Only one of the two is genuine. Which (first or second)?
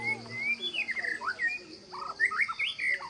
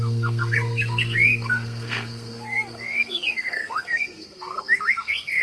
first